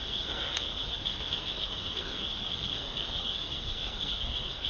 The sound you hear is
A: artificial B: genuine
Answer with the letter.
A